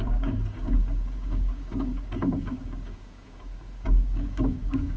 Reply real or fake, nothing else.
fake